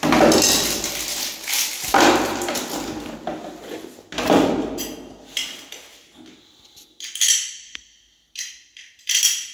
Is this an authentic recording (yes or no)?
yes